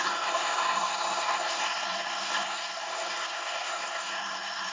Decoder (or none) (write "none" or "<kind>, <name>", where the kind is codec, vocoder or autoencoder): codec, SNAC